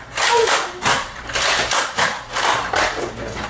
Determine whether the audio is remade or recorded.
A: recorded